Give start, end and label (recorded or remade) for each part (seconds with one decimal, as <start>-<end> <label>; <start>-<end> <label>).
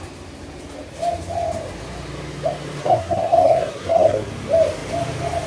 0.0-2.8 recorded; 2.8-4.3 remade; 4.3-5.5 recorded